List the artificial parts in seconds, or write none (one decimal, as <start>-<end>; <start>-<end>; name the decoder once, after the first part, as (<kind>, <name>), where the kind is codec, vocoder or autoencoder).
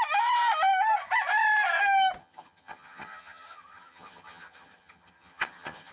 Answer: 2.2-5.9 (vocoder, HiFi-GAN)